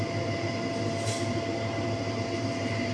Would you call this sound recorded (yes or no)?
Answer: yes